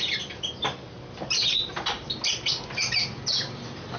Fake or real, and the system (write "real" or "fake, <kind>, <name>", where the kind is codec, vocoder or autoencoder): real